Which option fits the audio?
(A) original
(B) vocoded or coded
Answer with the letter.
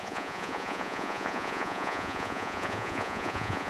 B